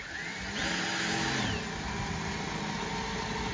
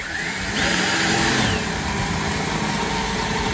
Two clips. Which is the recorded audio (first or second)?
first